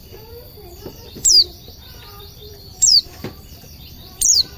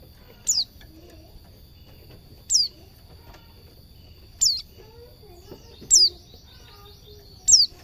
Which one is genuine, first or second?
second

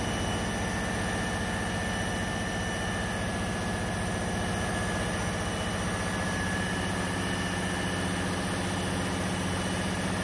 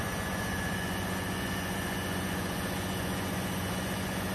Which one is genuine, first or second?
first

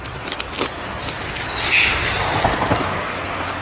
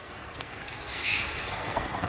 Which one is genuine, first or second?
first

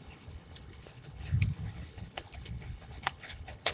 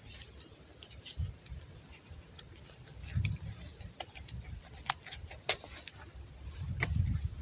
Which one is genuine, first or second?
second